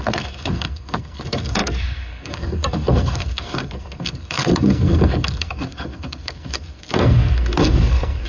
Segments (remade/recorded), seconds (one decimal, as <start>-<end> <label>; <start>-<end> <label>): 0.0-8.3 remade